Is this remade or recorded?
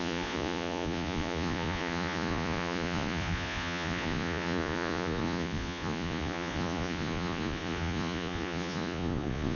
remade